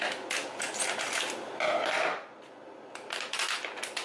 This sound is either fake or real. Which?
real